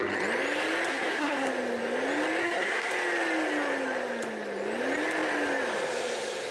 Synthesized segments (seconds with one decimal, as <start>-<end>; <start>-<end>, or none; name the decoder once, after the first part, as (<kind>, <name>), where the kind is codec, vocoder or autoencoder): 0.9-1.5 (codec, SNAC); 2.4-2.9